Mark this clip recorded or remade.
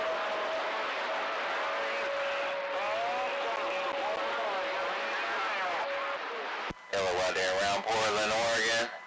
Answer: recorded